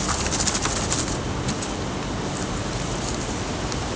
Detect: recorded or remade recorded